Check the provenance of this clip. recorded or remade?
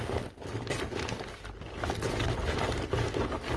recorded